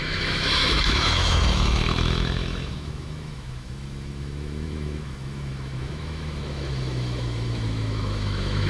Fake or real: fake